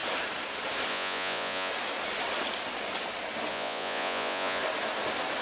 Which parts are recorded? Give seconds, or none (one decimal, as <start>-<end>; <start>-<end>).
0.0-0.9; 1.7-3.5; 4.6-5.4